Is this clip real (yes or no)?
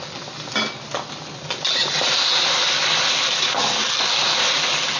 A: yes